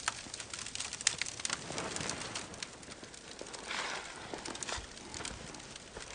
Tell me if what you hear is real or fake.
real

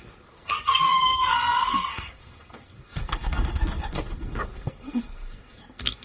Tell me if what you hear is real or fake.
fake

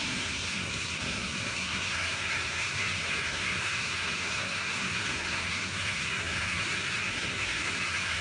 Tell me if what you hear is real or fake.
fake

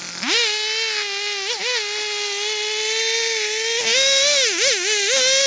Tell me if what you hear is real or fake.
real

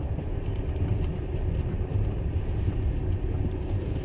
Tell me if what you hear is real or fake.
real